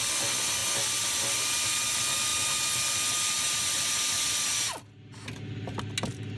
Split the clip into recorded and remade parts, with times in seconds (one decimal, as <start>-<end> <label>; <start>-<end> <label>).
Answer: 0.0-6.4 recorded

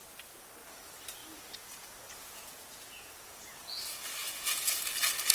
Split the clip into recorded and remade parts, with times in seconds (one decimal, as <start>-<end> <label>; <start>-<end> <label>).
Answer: 0.0-1.2 recorded; 1.2-1.7 remade; 1.7-2.2 recorded; 2.2-3.8 remade; 3.8-4.2 recorded; 4.2-4.7 remade; 4.7-5.3 recorded